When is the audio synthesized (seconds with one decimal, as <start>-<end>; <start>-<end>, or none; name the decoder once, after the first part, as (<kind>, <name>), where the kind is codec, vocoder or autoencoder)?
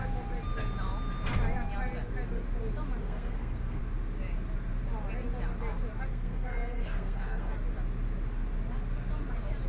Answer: 3.0-3.8 (codec, SNAC); 6.1-7.5